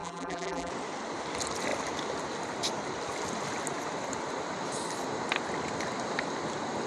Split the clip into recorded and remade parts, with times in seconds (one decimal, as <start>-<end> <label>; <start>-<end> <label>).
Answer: 0.0-0.7 remade; 0.7-6.9 recorded